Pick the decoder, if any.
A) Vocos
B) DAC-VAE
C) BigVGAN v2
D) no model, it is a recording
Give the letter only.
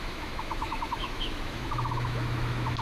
B